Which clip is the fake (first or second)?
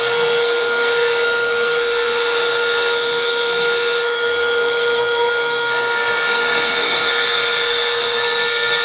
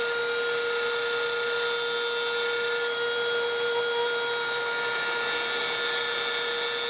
first